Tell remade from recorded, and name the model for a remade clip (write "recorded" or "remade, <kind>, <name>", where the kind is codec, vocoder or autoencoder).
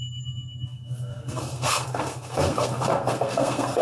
remade, codec, SNAC